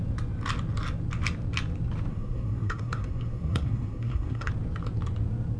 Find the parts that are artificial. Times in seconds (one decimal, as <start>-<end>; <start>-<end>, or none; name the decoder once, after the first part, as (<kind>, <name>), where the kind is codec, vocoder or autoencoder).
2.1-4.5 (codec, SNAC)